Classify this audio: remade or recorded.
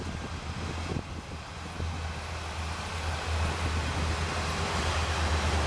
recorded